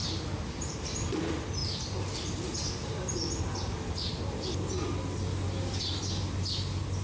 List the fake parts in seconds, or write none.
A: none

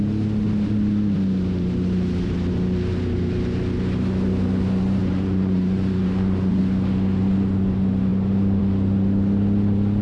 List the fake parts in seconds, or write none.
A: 5.0-6.6 (vocoder, Vocos)

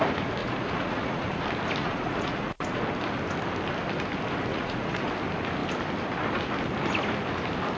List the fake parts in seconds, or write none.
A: 0.4-1.4 (vocoder, Vocos); 1.8-2.8; 4.5-5.1

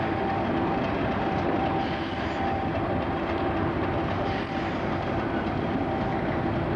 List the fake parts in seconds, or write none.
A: none

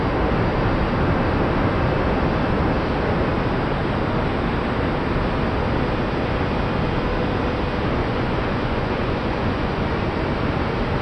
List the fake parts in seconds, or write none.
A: 8.0-10.0 (vocoder, Vocos)

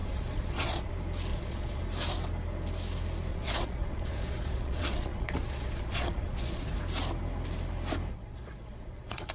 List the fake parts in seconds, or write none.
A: 0.0-0.9 (vocoder, Vocos); 1.3-1.8; 3.3-6.8; 8.1-9.3